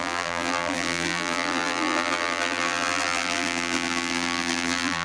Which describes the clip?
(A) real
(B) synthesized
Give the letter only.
B